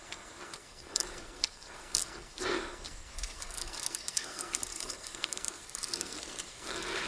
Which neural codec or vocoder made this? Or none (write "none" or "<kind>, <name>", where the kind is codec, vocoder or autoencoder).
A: codec, SNAC